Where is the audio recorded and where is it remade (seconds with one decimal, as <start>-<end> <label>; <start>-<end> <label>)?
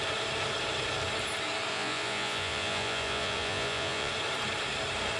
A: 0.0-1.7 recorded; 1.7-4.1 remade; 4.1-5.2 recorded